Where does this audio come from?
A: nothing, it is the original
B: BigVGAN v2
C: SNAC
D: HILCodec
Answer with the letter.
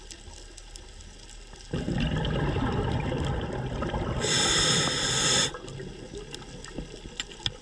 A